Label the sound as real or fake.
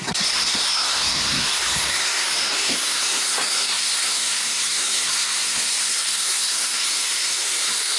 fake